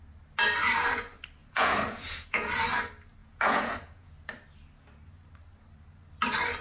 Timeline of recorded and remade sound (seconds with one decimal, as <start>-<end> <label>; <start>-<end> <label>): 0.0-1.4 recorded; 1.4-2.5 remade; 2.5-3.2 recorded; 3.2-4.1 remade; 4.1-6.6 recorded